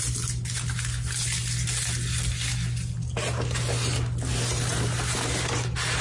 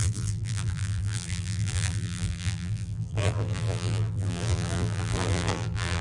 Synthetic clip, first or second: second